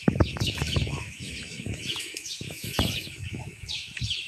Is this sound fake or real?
fake